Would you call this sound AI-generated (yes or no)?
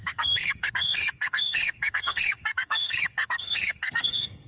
yes